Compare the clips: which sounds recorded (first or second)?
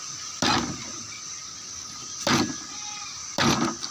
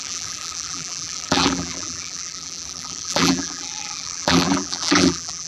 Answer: first